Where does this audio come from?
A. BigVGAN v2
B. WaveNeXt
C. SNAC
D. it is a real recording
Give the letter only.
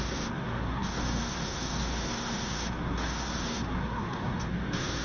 C